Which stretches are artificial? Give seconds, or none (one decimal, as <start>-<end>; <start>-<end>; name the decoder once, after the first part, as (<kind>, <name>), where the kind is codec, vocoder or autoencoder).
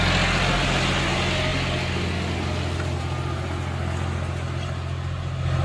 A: none